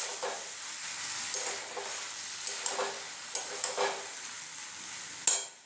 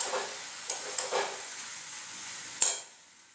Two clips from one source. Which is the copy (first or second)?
second